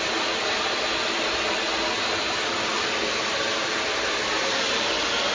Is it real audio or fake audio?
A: real